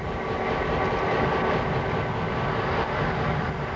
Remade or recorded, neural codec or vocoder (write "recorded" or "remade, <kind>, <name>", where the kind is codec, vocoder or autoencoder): recorded